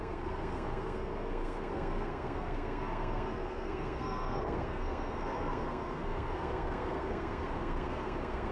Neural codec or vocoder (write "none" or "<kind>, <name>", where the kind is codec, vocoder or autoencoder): codec, SNAC